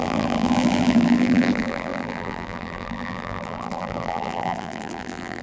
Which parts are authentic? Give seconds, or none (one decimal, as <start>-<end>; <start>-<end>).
none